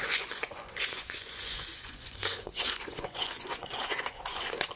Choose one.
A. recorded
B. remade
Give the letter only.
B